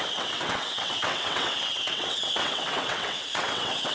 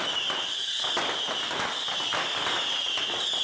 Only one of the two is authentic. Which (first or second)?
second